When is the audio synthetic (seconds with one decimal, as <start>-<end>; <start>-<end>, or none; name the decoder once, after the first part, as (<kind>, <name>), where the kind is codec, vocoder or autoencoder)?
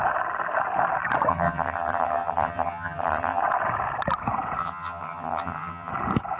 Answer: 1.3-3.4 (vocoder, HiFi-GAN); 4.6-5.9